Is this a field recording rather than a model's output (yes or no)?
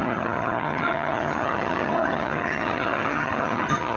no